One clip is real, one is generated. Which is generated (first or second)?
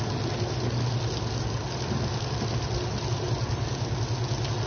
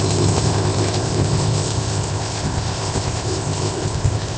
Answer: second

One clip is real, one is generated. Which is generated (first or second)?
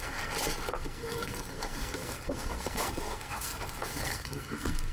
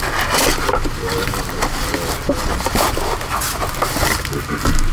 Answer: first